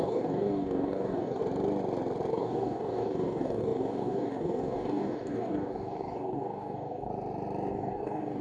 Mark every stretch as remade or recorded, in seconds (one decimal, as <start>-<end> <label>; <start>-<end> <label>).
0.0-1.4 remade; 1.4-2.3 recorded; 2.3-7.1 remade; 7.1-7.7 recorded; 7.7-8.4 remade